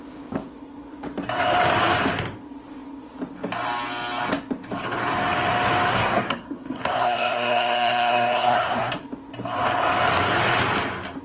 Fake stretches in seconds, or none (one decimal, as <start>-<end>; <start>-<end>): 5.9-8.9